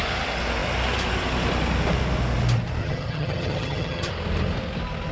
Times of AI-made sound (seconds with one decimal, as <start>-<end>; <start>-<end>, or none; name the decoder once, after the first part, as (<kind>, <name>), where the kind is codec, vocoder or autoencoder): 2.8-4.1 (vocoder, HiFi-GAN)